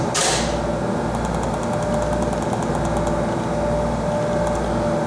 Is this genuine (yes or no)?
yes